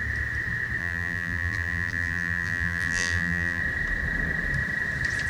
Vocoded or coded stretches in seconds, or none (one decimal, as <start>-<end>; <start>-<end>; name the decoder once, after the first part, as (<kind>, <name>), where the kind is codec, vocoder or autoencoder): 0.8-3.6 (vocoder, BigVGAN v2)